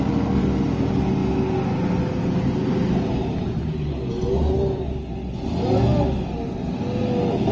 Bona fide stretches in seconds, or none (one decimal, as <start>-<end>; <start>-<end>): 0.0-7.5